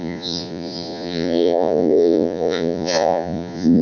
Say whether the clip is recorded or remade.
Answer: remade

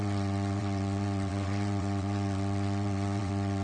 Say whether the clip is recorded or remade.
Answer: remade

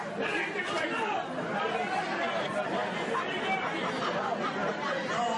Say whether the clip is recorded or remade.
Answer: recorded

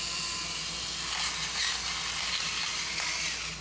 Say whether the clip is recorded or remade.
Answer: recorded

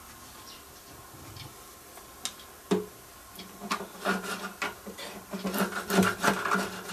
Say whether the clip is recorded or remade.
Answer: recorded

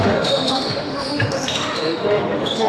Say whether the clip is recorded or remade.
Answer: remade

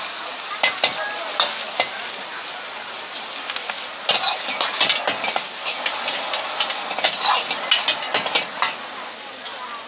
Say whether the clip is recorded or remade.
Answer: recorded